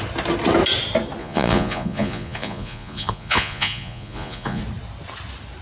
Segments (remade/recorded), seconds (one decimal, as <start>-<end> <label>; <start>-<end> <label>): 0.0-1.2 recorded; 1.2-4.6 remade; 4.6-5.6 recorded